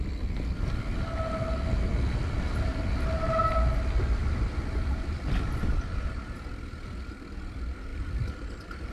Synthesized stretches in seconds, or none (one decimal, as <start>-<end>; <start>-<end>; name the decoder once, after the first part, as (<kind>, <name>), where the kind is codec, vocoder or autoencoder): 4.2-5.8 (vocoder, BigVGAN v2); 7.9-8.9